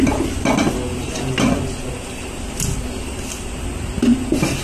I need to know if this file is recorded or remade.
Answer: recorded